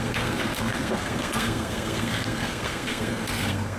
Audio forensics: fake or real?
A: fake